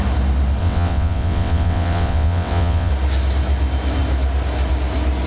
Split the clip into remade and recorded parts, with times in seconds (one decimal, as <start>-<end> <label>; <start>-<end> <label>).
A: 0.0-0.6 recorded; 0.6-2.9 remade; 2.9-5.3 recorded